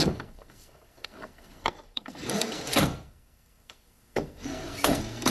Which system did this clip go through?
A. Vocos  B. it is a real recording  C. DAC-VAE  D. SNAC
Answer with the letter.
D